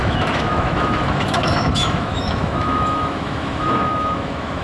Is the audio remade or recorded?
remade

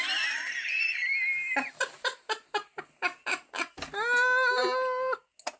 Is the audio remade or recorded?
recorded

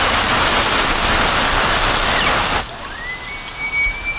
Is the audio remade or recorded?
recorded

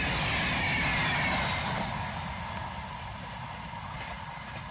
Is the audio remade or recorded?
recorded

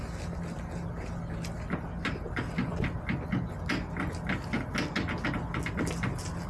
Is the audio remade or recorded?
recorded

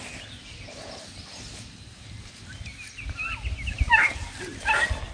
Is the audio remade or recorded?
recorded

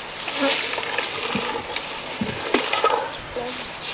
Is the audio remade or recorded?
recorded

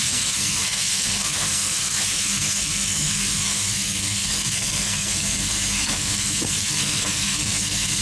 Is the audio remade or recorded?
remade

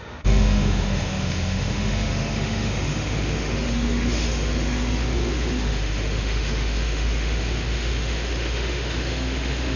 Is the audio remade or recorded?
remade